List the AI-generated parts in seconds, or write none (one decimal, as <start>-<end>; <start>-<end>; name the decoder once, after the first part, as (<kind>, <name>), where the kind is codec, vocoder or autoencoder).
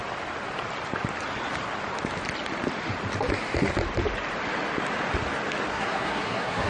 5.7-6.7 (codec, SNAC)